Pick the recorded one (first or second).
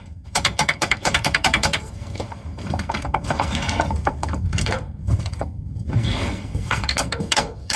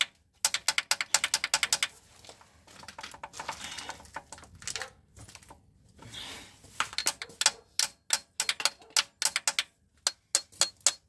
second